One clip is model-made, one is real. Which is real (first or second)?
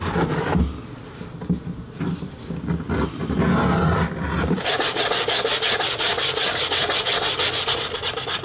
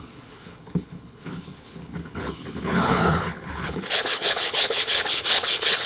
first